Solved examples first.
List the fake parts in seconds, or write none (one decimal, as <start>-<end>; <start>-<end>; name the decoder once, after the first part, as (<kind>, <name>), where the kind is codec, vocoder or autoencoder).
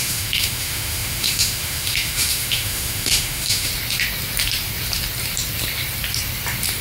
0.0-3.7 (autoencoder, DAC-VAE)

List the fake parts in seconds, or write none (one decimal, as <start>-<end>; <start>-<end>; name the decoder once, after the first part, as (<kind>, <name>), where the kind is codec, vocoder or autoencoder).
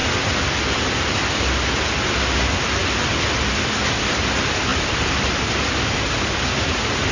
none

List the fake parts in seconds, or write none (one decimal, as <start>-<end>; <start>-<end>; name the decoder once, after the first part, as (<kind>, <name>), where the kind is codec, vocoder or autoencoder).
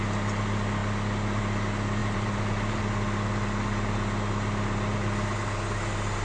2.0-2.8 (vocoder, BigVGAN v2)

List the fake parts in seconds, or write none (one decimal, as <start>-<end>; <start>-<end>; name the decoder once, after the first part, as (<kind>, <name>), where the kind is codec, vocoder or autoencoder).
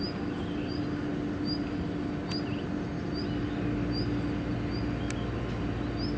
none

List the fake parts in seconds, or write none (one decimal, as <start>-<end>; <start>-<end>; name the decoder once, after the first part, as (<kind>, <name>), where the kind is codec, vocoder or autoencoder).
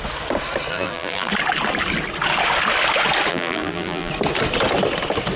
0.7-1.3 (vocoder, BigVGAN v2); 3.3-4.1